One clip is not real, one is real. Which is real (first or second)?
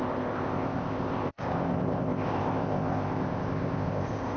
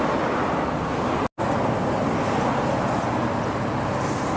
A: second